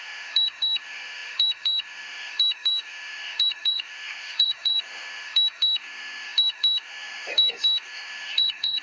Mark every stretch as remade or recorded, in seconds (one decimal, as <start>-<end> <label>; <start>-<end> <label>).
0.0-8.8 remade